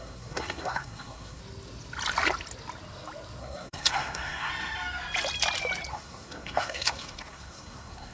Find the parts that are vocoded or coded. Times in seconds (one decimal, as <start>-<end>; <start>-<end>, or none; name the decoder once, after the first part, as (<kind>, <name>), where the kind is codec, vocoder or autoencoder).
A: 0.0-1.4 (codec, SNAC); 3.4-4.5; 5.9-8.1